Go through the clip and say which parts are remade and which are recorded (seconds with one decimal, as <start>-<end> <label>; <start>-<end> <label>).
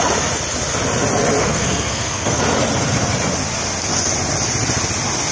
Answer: 0.0-1.4 recorded; 1.4-2.4 remade; 2.4-5.3 recorded